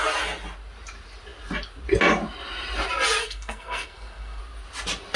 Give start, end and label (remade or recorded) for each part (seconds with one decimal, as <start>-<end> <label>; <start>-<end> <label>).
0.0-3.2 recorded; 3.2-4.4 remade; 4.4-5.2 recorded